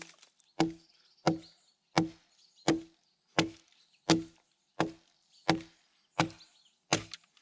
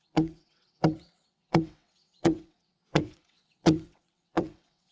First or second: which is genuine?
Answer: first